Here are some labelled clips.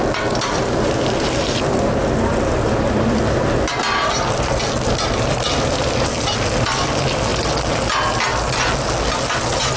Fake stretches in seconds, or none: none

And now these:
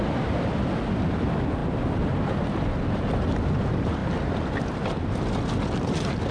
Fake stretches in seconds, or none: none

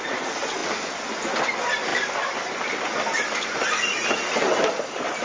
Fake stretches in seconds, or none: none

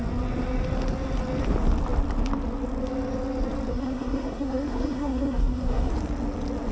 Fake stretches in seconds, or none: 3.7-5.9